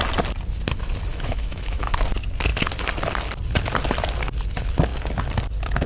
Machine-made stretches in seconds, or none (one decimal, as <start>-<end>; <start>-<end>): 1.1-1.9